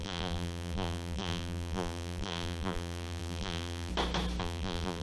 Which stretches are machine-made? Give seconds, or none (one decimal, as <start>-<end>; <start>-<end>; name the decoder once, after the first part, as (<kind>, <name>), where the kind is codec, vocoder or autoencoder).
0.0-3.9 (vocoder, BigVGAN v2); 4.4-5.0